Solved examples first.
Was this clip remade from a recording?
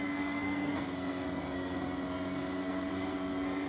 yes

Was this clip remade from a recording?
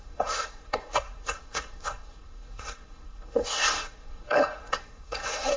yes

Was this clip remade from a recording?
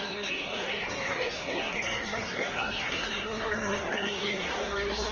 yes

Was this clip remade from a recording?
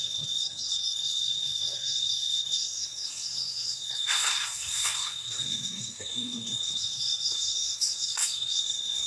yes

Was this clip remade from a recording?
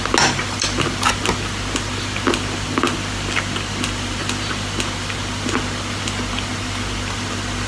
no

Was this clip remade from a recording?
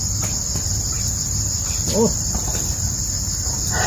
no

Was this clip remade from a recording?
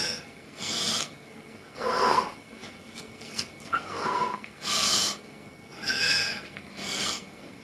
yes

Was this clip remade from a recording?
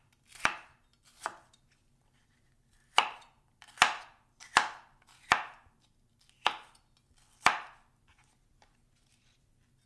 no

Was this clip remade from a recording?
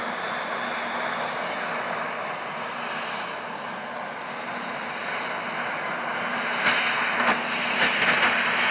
no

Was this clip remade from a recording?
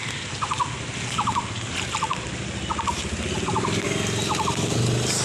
no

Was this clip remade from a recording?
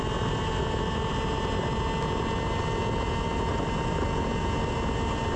no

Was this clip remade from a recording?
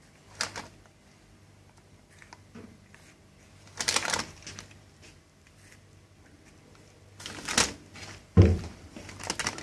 no